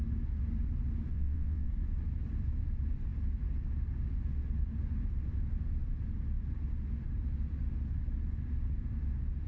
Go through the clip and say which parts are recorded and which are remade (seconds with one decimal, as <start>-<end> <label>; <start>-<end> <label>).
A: 0.0-1.1 recorded; 1.1-1.7 remade; 1.7-9.5 recorded